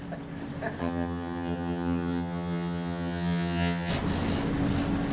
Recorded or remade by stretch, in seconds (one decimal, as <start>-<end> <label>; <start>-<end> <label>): 0.0-0.8 recorded; 0.8-3.9 remade; 3.9-5.1 recorded

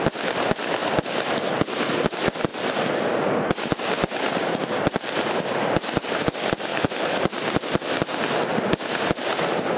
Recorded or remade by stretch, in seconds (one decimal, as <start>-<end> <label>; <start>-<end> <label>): 0.0-6.7 recorded; 6.7-7.2 remade; 7.2-9.8 recorded

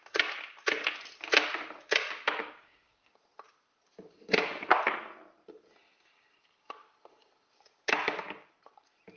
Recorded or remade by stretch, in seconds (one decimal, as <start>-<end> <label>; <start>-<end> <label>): 0.0-2.4 recorded; 2.4-3.1 remade; 3.1-9.2 recorded